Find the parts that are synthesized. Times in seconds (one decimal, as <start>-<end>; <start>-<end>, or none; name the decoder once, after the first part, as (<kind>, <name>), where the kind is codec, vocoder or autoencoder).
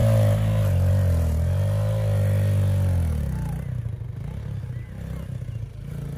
none